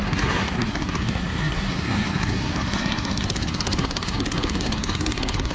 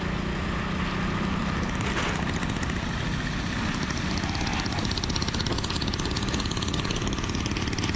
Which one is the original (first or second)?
second